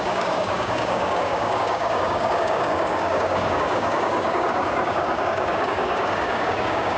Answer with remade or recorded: remade